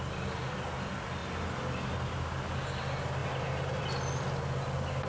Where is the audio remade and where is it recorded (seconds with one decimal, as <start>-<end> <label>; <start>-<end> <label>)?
0.0-5.1 recorded